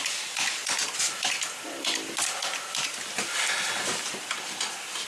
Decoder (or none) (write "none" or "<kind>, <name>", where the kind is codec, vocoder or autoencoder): none